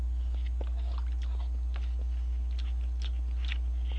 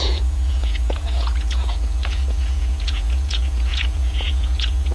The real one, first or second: first